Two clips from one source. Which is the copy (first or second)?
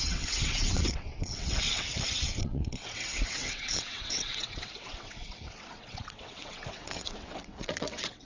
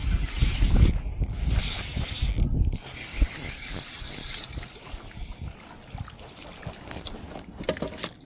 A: first